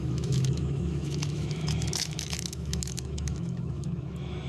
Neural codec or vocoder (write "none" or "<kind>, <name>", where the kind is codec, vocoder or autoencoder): autoencoder, DAC-VAE